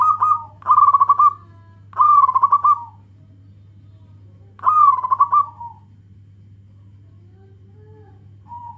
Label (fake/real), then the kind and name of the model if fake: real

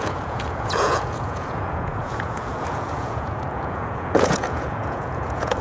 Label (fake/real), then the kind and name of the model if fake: fake, vocoder, Vocos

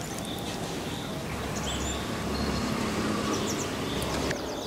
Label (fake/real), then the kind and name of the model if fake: real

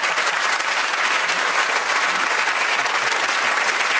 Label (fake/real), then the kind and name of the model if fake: real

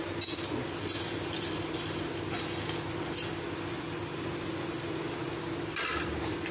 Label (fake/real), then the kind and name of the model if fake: real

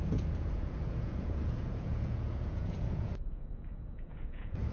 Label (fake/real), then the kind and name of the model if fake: fake, vocoder, Vocos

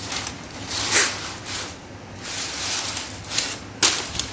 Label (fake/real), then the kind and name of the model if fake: real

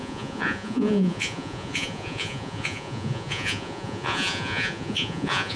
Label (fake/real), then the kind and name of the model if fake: fake, vocoder, Vocos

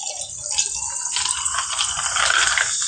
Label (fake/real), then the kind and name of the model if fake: real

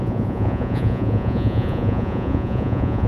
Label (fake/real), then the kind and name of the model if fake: fake, vocoder, Vocos